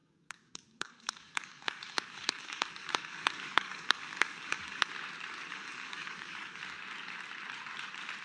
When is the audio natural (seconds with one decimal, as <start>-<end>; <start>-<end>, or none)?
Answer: 4.9-5.5; 6.6-8.2

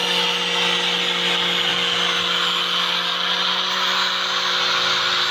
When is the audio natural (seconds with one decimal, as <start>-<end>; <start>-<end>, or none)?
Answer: 0.0-5.3

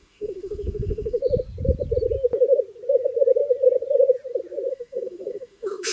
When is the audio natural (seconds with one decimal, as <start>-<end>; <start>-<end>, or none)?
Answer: 1.2-4.7

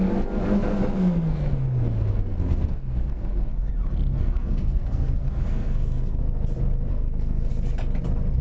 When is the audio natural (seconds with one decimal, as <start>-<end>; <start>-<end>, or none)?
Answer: 0.0-0.7; 3.7-4.2; 6.2-6.9; 7.5-8.4